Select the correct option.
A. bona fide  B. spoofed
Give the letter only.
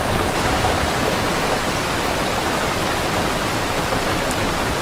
A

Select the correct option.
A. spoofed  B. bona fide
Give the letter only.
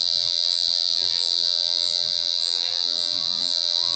A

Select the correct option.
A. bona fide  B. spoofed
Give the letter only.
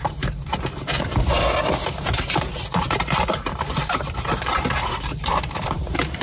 B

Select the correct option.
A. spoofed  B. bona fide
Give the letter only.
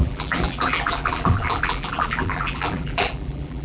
A